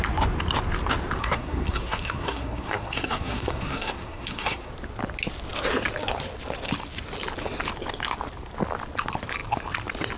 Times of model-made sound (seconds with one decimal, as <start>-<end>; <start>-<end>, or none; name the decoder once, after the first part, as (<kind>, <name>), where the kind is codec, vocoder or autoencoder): 1.2-4.7 (codec, SNAC)